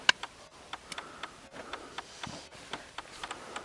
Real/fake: real